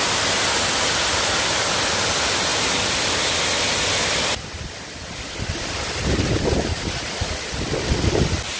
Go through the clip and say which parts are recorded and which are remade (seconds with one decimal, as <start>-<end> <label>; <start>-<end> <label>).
0.0-8.6 recorded